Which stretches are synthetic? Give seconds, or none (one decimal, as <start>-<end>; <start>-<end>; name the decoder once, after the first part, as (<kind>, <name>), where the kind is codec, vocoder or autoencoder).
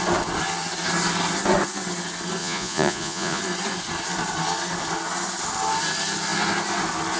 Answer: 2.4-3.4 (vocoder, Vocos)